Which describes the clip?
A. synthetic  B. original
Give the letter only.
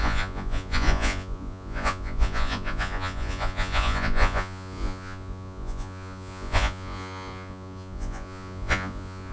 A